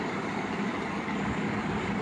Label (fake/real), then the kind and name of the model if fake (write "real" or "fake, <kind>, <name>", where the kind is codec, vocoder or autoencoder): fake, codec, DAC